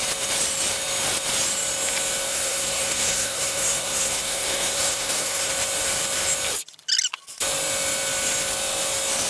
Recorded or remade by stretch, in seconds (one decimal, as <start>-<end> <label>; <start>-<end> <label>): 0.0-2.3 recorded; 2.3-5.5 remade; 5.5-9.3 recorded